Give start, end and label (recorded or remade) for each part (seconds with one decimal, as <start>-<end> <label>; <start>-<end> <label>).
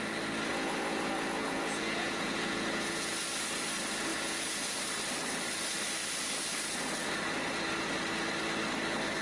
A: 0.0-0.5 recorded; 0.5-3.1 remade; 3.1-4.1 recorded; 4.1-4.8 remade; 4.8-9.2 recorded